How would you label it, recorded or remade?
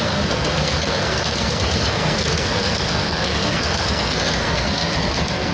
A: remade